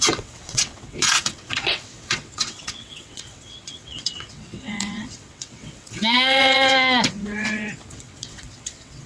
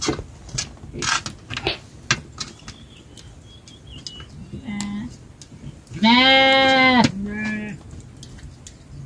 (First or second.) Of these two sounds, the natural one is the second